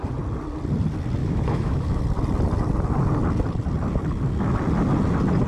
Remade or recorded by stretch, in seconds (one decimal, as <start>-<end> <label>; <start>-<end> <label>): 0.0-1.2 recorded; 1.2-2.0 remade; 2.0-5.5 recorded